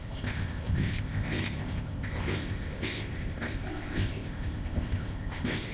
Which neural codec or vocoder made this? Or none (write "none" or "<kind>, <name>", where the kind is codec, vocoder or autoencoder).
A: codec, ZipCodec